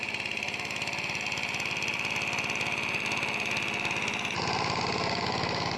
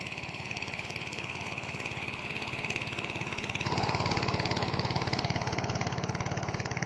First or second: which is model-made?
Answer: second